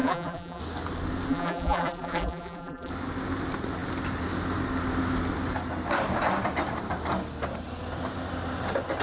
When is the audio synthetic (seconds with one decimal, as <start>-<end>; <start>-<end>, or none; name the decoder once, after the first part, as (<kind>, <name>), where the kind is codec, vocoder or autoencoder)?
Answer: 0.0-0.6 (vocoder, BigVGAN v2); 1.3-2.9